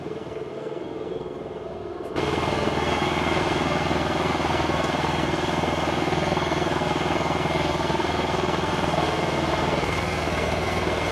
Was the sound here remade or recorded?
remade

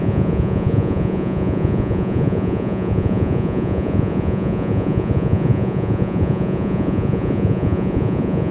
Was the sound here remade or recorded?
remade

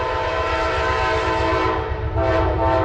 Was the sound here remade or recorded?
recorded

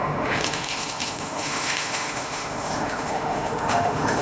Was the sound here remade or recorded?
remade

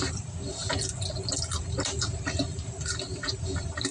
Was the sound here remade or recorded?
recorded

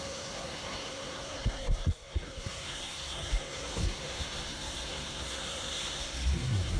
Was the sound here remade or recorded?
remade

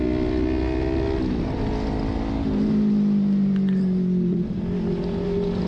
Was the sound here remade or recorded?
recorded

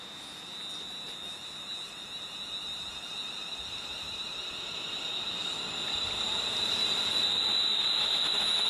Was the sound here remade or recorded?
recorded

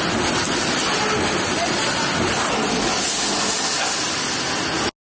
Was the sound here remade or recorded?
recorded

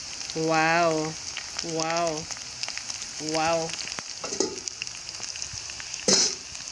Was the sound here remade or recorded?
recorded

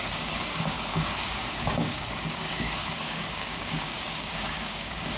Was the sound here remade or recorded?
remade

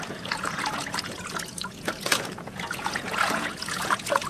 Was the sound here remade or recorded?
remade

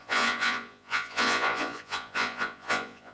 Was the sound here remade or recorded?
remade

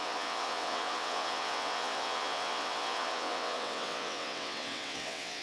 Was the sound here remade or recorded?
remade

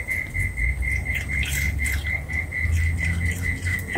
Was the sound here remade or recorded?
recorded